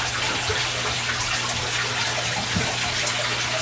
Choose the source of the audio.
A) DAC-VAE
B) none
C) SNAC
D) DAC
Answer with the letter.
B